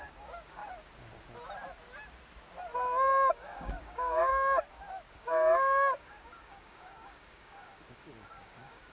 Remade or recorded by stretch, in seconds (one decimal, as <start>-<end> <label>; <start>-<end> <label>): 0.0-0.6 remade; 0.6-3.3 recorded; 3.3-4.3 remade; 4.3-5.1 recorded; 5.1-8.9 remade